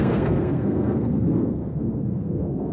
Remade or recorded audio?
remade